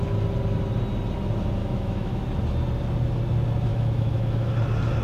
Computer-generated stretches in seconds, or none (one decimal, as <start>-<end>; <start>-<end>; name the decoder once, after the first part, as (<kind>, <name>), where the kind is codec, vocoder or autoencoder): 1.6-2.2 (autoencoder, DAC-VAE); 3.7-4.5